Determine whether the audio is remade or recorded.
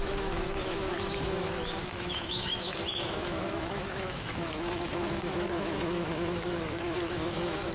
remade